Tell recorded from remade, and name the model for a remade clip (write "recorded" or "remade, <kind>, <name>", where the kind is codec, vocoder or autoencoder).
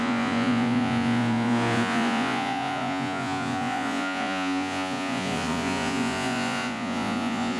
remade, vocoder, Vocos